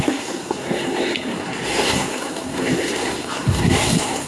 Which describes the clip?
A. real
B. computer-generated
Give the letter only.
B